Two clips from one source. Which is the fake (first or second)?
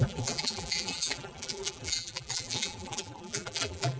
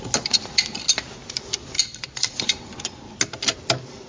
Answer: first